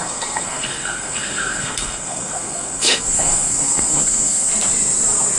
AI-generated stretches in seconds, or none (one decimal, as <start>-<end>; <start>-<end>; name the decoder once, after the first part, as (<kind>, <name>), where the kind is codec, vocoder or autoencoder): 0.0-4.5 (codec, SNAC)